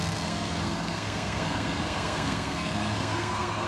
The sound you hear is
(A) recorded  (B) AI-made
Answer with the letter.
B